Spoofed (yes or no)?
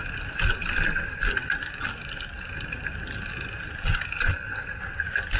no